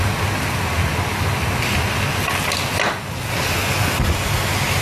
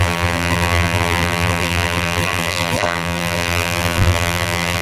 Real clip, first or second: first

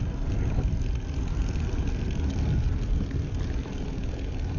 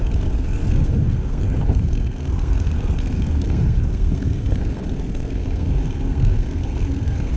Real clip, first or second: first